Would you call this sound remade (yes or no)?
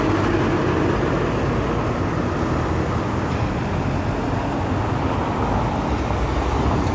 no